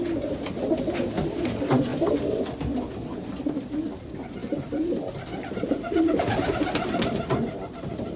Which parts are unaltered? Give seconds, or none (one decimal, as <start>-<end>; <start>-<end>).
0.0-1.9; 2.7-4.4; 6.0-8.2